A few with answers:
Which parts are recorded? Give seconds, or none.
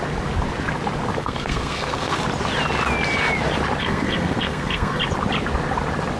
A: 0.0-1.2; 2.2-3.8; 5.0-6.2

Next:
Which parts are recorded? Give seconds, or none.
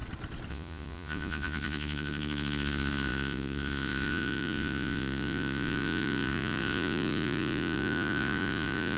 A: 0.0-0.5